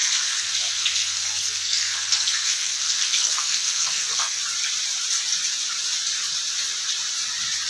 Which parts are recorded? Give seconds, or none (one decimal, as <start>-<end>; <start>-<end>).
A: 4.4-7.7